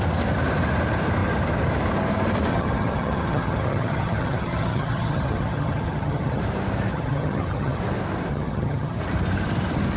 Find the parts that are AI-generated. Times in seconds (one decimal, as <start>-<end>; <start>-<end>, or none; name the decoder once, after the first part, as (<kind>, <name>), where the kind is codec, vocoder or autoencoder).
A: 2.5-6.4 (vocoder, HiFi-GAN); 6.9-7.8; 8.3-9.0

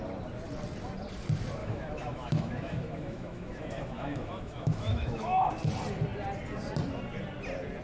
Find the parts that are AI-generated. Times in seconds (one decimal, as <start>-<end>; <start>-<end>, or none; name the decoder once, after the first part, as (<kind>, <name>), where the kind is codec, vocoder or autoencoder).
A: 1.6-5.5 (autoencoder, DAC-VAE)